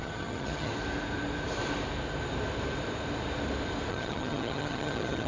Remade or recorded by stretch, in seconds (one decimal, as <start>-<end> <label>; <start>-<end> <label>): 0.0-0.7 remade; 0.7-3.9 recorded; 3.9-5.3 remade